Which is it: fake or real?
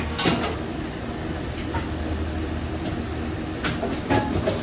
real